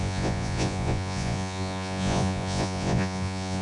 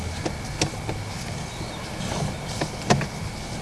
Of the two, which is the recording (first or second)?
second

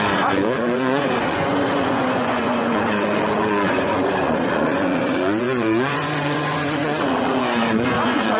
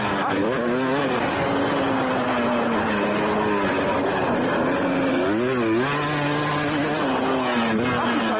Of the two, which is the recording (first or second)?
second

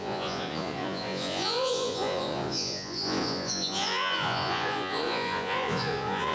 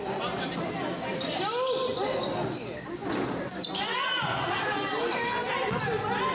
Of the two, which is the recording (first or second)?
second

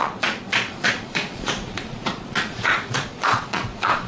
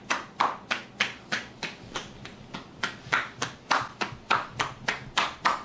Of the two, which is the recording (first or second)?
second